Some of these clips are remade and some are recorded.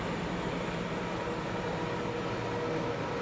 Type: recorded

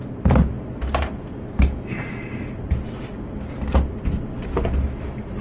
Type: recorded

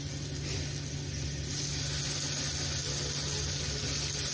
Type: recorded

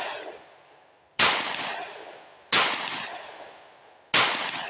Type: recorded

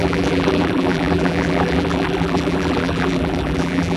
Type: remade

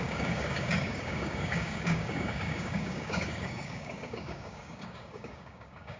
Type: remade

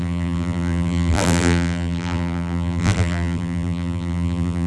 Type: remade